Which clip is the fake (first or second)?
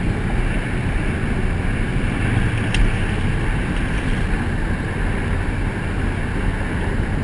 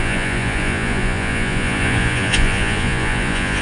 second